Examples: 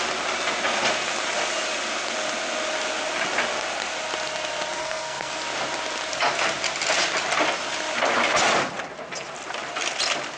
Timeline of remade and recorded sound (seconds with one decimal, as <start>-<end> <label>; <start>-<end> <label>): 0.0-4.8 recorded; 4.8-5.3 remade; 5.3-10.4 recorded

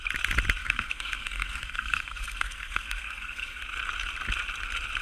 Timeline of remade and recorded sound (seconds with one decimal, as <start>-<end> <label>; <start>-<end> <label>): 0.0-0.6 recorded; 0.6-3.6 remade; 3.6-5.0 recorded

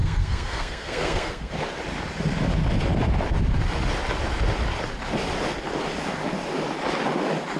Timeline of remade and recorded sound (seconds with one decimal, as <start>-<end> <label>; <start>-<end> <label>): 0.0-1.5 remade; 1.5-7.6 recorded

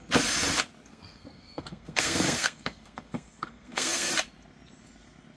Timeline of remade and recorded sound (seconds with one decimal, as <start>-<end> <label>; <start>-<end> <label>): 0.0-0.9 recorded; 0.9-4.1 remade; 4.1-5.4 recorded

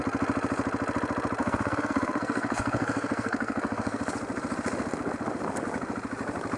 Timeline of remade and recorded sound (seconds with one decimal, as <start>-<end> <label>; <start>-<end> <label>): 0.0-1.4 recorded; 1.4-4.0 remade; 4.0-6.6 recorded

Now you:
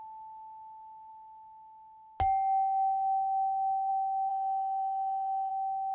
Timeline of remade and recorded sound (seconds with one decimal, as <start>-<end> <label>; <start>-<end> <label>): 0.0-4.3 recorded; 4.3-5.5 remade; 5.5-5.9 recorded